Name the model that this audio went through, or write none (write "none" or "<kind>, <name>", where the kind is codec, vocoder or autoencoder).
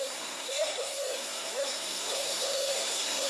codec, SNAC